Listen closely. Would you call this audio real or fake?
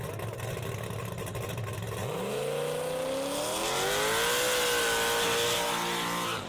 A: real